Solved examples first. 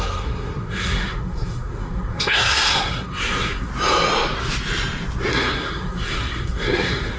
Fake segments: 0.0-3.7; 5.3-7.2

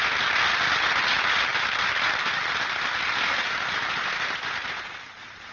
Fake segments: none

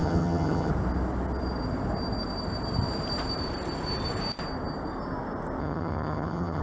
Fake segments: 0.0-0.7; 5.6-6.6